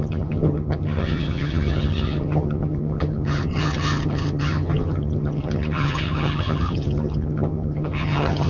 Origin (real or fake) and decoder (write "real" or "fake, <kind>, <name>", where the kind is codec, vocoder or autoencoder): fake, vocoder, HiFi-GAN